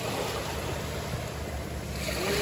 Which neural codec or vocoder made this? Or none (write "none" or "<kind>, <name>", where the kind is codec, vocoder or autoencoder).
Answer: none